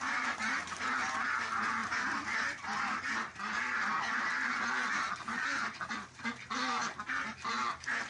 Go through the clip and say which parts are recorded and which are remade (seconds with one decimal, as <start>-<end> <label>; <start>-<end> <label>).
0.0-8.1 recorded